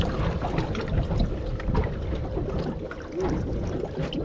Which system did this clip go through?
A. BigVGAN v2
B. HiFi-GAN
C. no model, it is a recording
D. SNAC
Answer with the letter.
C